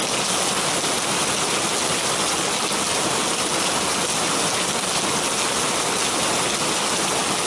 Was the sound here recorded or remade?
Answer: recorded